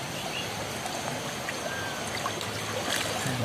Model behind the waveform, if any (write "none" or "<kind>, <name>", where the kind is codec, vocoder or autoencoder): none